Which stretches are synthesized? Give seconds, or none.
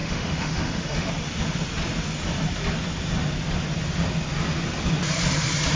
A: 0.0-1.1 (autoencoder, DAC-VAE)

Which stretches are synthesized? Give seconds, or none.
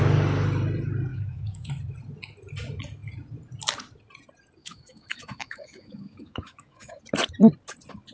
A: 1.1-1.7 (autoencoder, DAC-VAE); 4.6-7.0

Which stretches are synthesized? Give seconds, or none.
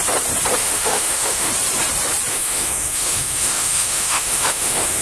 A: 0.6-1.5 (autoencoder, DAC-VAE); 2.3-5.0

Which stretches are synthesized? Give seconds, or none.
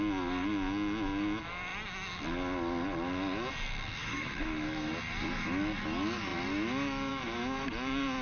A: 4.0-4.9 (autoencoder, DAC-VAE)